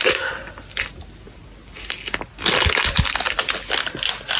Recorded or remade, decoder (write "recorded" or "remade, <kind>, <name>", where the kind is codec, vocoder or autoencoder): recorded